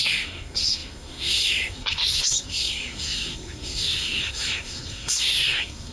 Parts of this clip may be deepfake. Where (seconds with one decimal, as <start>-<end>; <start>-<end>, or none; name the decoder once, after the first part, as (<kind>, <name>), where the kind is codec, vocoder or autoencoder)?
0.0-5.9 (codec, SNAC)